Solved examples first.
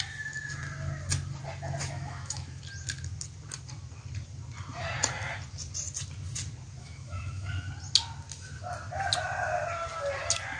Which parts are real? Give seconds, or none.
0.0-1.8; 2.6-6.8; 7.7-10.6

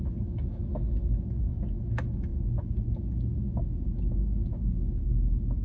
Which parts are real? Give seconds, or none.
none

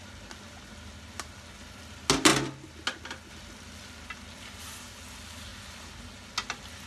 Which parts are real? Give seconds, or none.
0.0-6.9